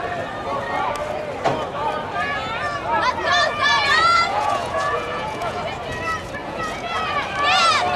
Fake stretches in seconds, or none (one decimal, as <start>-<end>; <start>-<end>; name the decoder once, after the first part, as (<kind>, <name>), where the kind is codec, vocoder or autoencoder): 3.2-5.6 (vocoder, Vocos); 6.4-7.0